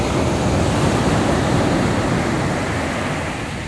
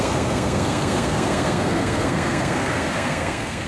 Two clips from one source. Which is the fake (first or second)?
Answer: second